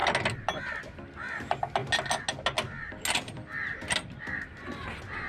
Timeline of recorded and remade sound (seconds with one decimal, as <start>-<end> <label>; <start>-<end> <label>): 0.0-5.3 recorded